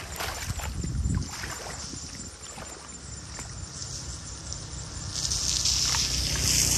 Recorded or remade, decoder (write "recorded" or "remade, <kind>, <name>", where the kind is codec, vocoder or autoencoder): recorded